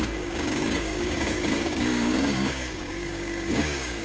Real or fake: fake